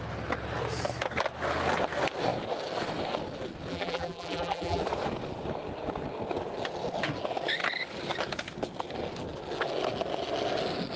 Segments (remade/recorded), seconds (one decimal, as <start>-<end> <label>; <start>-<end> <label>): 0.0-3.7 recorded; 3.7-4.8 remade; 4.8-11.0 recorded